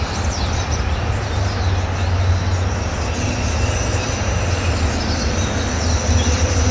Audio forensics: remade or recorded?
recorded